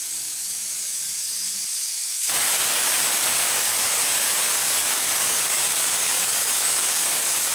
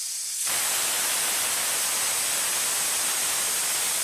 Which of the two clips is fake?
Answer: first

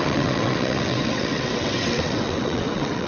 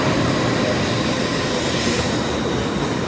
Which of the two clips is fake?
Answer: first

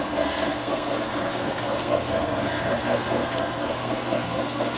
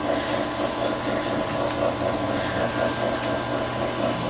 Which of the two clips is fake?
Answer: first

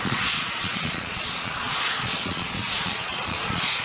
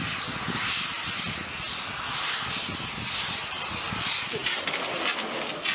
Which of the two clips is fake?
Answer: first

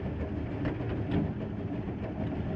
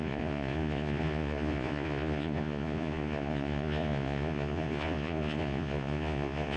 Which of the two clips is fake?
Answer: second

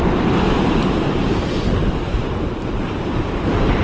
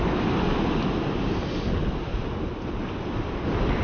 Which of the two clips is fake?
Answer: first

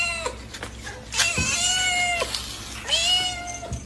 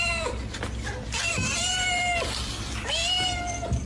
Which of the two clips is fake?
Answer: second